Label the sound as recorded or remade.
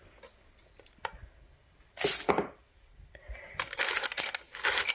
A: recorded